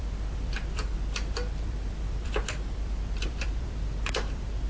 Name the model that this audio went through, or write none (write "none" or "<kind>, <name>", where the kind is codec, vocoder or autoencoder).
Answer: vocoder, BigVGAN v2